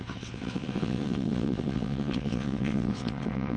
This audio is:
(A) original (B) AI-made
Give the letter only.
B